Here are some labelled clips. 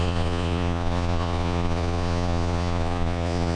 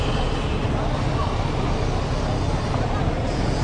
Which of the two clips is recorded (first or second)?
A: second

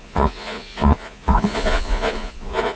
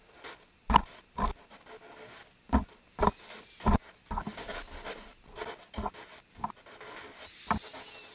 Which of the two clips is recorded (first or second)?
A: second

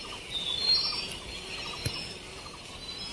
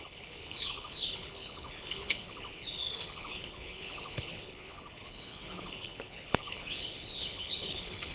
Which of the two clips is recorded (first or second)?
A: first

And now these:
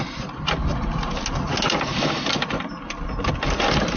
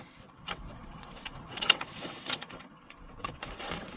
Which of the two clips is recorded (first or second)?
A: first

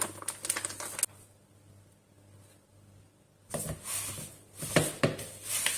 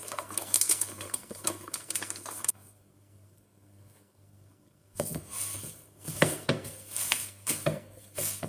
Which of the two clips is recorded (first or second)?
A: first